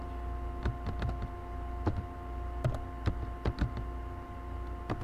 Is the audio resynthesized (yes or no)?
no